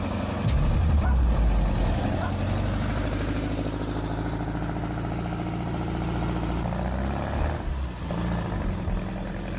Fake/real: real